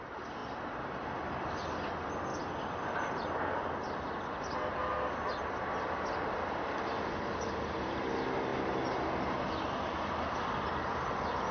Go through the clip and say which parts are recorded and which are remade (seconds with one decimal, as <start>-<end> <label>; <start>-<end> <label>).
0.0-11.5 recorded